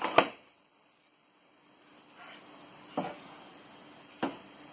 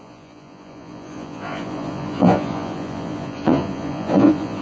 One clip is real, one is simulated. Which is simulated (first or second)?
second